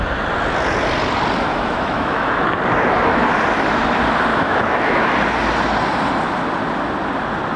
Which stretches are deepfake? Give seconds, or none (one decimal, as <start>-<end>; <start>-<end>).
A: 1.5-2.4; 4.3-5.0